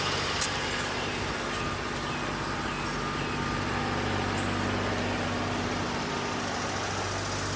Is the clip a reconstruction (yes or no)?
no